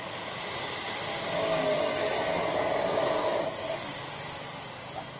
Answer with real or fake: real